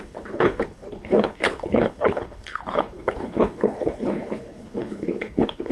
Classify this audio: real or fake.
fake